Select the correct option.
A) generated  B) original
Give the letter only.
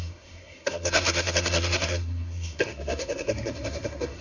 A